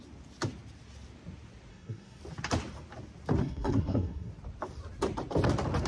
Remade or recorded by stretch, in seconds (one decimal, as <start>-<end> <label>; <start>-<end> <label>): 0.0-1.7 recorded; 1.7-2.2 remade; 2.2-3.4 recorded; 3.4-4.3 remade; 4.3-5.9 recorded